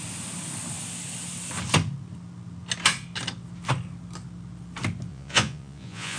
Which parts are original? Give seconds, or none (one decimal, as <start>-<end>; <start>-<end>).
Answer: 0.0-5.1